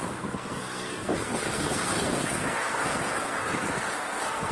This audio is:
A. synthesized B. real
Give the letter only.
A